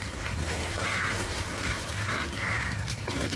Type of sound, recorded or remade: remade